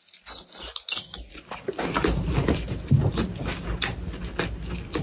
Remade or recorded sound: recorded